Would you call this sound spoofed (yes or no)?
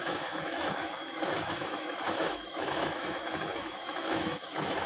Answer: yes